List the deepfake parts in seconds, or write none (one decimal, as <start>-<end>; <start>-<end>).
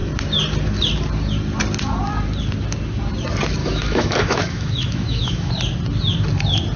3.6-5.5